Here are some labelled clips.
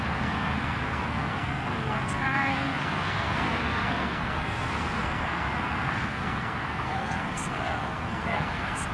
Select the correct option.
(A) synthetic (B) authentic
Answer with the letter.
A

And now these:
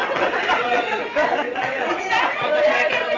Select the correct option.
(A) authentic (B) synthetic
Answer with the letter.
B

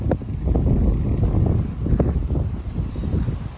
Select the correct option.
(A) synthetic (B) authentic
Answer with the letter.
B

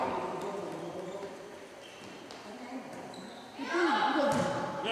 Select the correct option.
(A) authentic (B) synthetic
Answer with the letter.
B